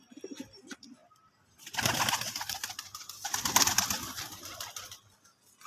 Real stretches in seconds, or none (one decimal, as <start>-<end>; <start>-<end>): 0.0-5.7